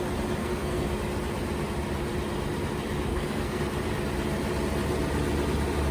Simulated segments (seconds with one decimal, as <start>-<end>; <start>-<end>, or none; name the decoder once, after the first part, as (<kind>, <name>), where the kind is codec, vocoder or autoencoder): 0.4-0.9 (codec, SNAC); 3.1-3.6